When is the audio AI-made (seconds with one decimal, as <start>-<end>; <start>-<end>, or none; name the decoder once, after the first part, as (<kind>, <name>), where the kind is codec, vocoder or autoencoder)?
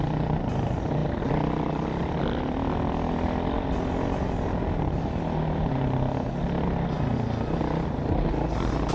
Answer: none